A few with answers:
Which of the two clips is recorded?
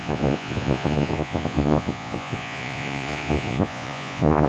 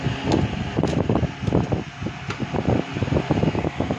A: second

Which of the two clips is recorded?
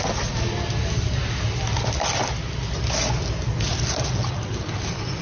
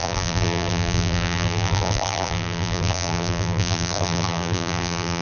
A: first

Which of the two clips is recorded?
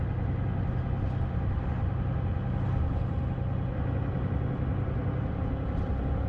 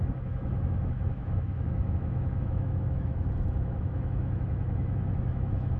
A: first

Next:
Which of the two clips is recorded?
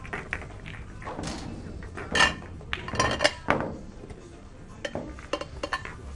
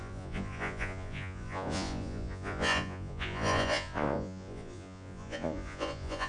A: first